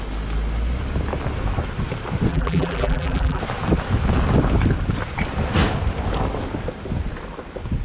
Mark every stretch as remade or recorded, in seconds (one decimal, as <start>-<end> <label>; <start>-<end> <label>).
0.0-2.3 recorded; 2.3-3.4 remade; 3.4-7.8 recorded